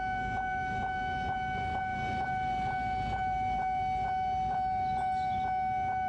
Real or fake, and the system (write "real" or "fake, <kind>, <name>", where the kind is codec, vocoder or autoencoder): real